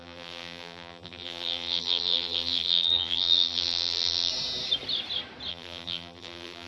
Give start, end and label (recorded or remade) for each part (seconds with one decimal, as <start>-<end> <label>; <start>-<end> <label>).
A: 0.0-4.3 remade; 4.3-5.5 recorded; 5.5-6.7 remade